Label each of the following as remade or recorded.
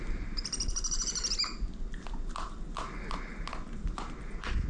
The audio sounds recorded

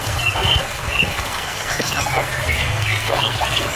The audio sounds remade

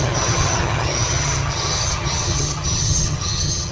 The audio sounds remade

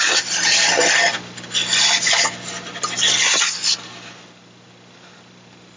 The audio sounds recorded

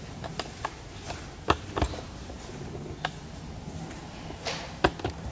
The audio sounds recorded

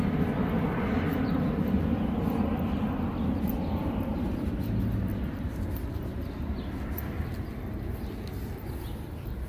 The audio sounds recorded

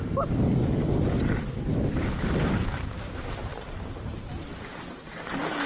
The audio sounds recorded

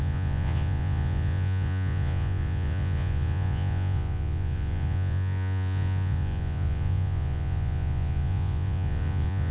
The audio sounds remade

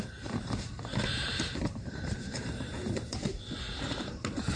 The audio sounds remade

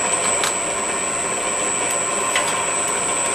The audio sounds recorded